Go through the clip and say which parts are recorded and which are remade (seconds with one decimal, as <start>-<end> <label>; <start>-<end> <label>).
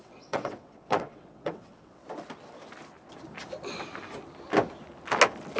0.0-2.0 remade; 2.0-5.6 recorded